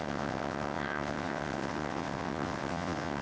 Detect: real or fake fake